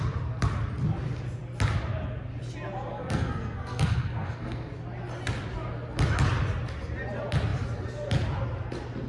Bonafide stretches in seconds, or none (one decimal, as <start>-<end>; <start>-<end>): 0.0-2.9; 4.7-9.1